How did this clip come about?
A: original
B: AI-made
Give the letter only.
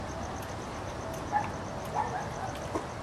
A